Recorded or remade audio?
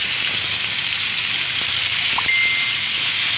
recorded